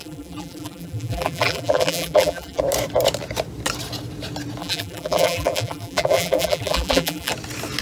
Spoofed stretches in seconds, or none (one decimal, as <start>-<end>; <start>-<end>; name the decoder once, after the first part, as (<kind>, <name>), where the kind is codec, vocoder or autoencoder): 0.0-2.6 (vocoder, BigVGAN v2); 4.6-7.3